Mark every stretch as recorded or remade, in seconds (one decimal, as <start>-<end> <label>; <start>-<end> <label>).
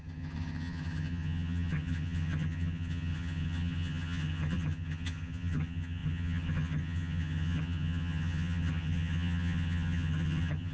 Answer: 0.0-10.7 remade